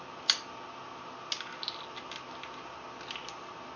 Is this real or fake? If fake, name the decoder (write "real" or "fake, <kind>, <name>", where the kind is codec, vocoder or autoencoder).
real